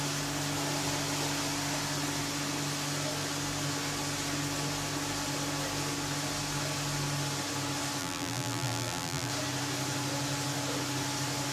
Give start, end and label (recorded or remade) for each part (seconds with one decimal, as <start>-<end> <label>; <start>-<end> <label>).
0.0-8.0 recorded; 8.0-9.3 remade; 9.3-11.5 recorded